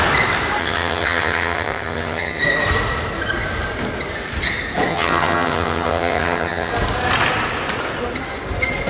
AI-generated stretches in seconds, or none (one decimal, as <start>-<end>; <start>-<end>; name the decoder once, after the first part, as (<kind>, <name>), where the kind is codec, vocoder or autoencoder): 0.6-2.4 (vocoder, HiFi-GAN); 4.9-6.7